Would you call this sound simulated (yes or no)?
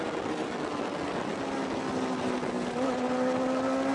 no